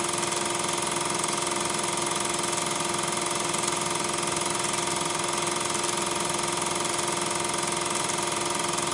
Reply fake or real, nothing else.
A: real